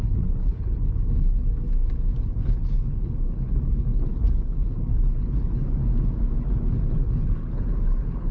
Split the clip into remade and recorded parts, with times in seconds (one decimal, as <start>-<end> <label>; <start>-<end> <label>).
0.0-1.5 remade; 1.5-2.2 recorded; 2.2-5.8 remade; 5.8-6.4 recorded; 6.4-8.3 remade